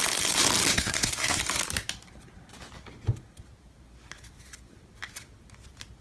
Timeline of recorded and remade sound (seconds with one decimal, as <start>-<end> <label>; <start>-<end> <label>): 0.0-0.7 recorded; 0.7-1.4 remade; 1.4-6.0 recorded